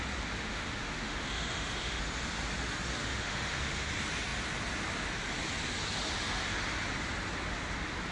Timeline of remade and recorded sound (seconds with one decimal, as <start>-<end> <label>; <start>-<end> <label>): 0.0-0.5 recorded; 0.5-2.0 remade; 2.0-3.0 recorded; 3.0-3.9 remade; 3.9-8.1 recorded